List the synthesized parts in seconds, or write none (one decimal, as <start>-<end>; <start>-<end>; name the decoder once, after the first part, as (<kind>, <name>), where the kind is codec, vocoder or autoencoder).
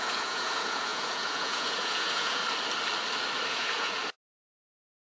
0.0-2.4 (vocoder, Vocos); 3.5-4.0; 4.5-5.0